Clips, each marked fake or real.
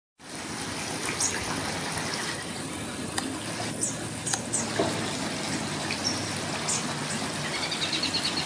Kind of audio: real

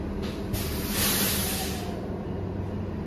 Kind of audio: real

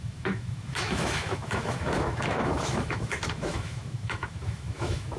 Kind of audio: fake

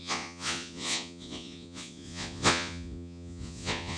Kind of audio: fake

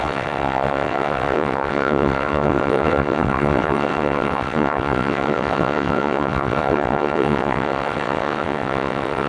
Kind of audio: fake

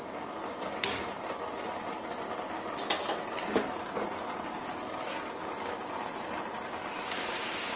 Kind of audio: real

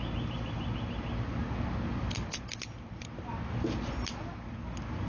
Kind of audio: real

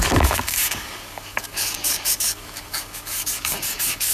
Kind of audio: fake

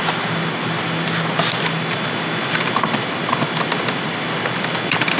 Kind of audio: real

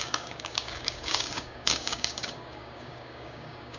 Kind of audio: fake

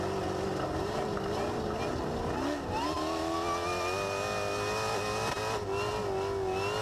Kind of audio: real